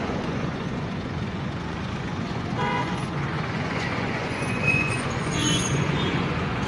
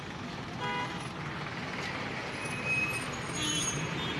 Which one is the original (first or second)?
second